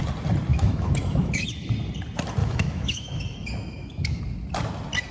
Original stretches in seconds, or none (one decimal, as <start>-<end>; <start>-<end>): 0.0-0.5; 1.7-2.4; 4.2-5.1